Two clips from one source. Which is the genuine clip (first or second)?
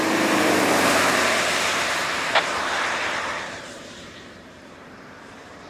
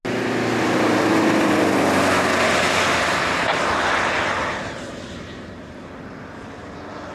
second